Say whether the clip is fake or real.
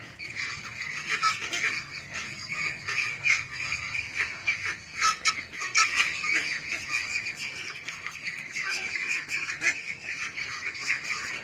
fake